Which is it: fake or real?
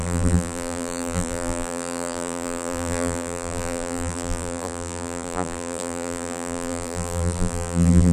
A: fake